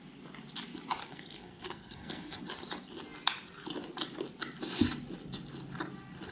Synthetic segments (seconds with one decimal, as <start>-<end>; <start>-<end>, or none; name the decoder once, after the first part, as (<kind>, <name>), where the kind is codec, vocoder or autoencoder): 1.0-2.4 (codec, SNAC)